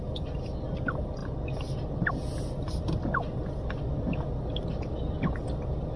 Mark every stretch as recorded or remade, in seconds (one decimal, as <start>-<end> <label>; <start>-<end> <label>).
0.0-6.0 recorded